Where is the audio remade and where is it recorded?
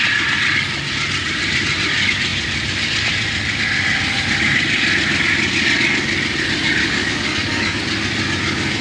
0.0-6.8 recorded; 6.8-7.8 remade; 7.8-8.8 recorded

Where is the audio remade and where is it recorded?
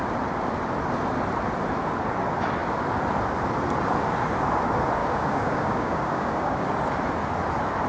0.0-5.0 recorded; 5.0-6.7 remade; 6.7-7.9 recorded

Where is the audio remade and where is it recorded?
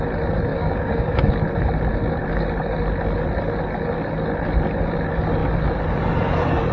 0.0-0.5 recorded; 0.5-1.3 remade; 1.3-6.7 recorded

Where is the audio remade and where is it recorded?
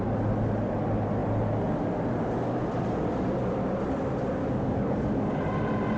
0.0-4.4 recorded; 4.4-5.4 remade; 5.4-6.0 recorded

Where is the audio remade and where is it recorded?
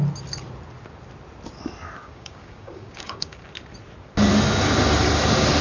0.0-2.0 recorded; 2.0-3.5 remade; 3.5-5.6 recorded